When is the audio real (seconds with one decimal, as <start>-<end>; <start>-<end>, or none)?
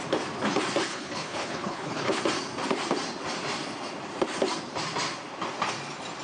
0.0-0.9; 2.2-6.2